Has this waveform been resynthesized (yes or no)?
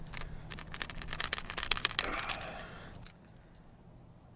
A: no